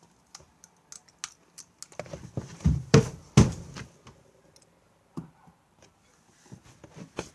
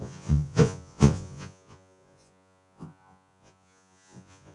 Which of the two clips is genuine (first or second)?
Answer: first